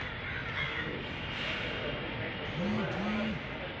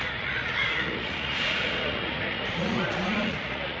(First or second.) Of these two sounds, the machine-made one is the second